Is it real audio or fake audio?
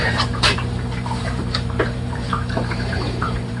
fake